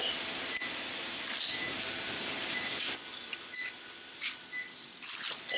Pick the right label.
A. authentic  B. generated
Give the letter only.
A